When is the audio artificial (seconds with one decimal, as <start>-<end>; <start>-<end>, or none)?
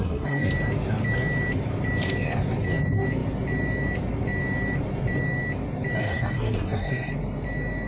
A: 0.0-0.5; 6.0-7.1